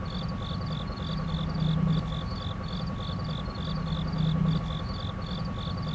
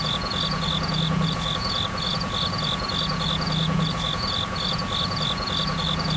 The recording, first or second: first